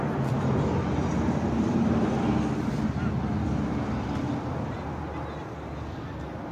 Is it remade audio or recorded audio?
recorded